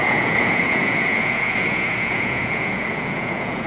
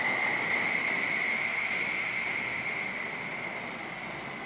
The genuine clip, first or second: second